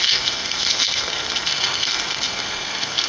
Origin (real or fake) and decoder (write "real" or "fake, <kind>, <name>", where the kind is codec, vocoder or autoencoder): fake, codec, SNAC